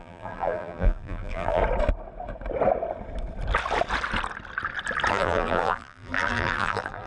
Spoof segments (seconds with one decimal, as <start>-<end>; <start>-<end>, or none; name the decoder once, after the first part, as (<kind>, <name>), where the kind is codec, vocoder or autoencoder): 0.0-1.6 (vocoder, BigVGAN v2); 5.1-7.1